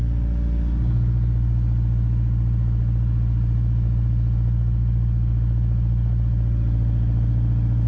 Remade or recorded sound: recorded